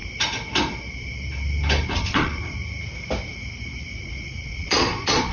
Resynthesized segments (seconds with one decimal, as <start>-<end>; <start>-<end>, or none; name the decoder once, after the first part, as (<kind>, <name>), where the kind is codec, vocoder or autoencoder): 1.9-2.3 (vocoder, Vocos); 4.0-5.3